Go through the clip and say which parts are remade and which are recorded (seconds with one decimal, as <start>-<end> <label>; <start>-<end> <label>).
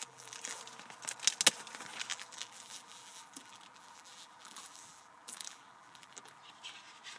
0.0-0.6 remade; 0.6-2.1 recorded; 2.1-6.4 remade; 6.4-7.2 recorded